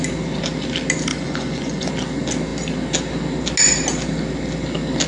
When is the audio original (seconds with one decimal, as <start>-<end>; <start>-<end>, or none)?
0.0-1.1; 1.9-5.1